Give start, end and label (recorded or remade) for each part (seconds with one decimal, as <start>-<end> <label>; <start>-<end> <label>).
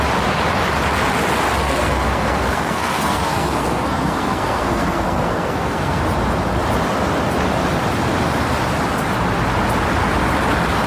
0.0-1.6 recorded; 1.6-6.0 remade; 6.0-10.9 recorded